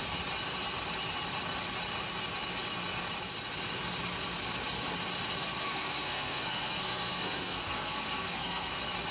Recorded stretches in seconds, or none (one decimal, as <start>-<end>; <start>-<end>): 0.0-5.4; 8.7-9.1